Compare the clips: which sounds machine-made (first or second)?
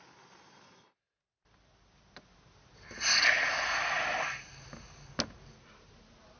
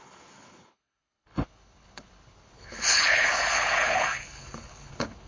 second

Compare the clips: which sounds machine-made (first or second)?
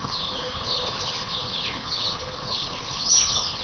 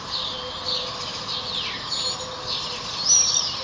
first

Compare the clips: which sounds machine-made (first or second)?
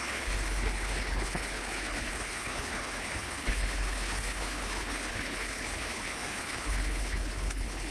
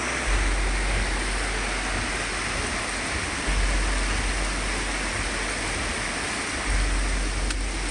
first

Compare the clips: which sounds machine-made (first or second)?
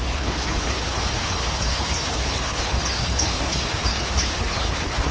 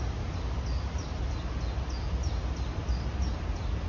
first